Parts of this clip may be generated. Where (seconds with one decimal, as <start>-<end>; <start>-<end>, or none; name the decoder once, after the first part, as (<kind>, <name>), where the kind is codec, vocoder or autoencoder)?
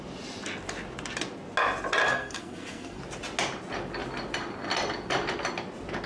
2.1-3.0 (codec, SNAC)